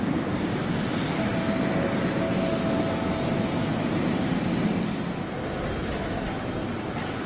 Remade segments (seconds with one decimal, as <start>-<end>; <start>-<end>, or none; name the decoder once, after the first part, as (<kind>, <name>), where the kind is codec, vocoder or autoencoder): none